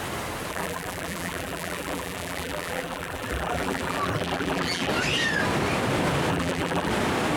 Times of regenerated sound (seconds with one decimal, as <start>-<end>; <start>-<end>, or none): 0.5-4.9; 6.3-6.9